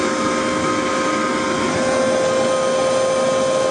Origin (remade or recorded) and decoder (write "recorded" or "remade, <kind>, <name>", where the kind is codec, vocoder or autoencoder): recorded